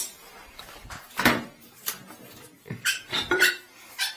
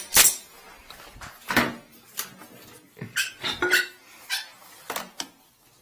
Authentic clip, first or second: second